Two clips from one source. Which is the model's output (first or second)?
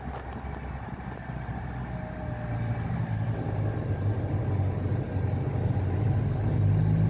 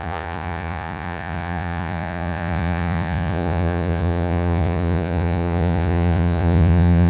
second